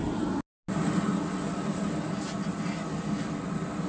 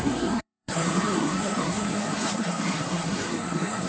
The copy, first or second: second